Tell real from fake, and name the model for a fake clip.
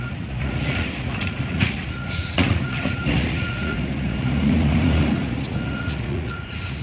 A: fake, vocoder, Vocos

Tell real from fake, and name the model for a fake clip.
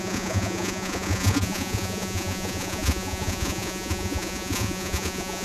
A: fake, vocoder, Vocos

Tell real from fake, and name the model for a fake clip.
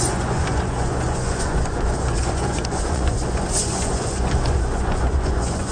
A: fake, vocoder, Vocos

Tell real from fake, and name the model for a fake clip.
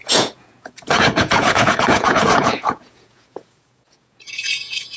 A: fake, vocoder, Vocos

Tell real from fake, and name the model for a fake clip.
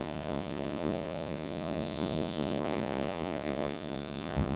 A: fake, vocoder, Vocos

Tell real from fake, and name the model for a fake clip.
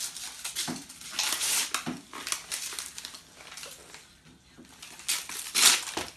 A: real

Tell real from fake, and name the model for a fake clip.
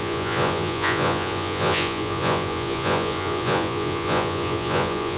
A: fake, vocoder, Vocos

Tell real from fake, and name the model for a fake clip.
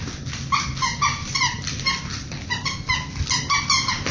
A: real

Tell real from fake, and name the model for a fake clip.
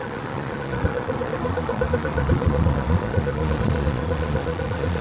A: fake, vocoder, Vocos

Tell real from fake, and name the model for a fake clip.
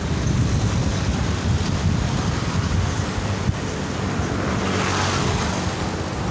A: real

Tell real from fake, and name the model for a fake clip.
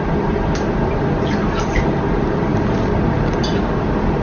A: real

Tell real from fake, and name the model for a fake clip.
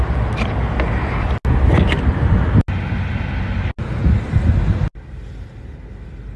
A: real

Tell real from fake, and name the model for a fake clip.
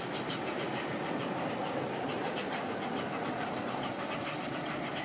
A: real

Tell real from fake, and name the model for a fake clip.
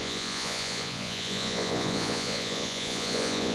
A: fake, vocoder, Vocos